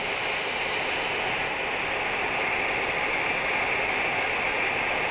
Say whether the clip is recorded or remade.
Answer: recorded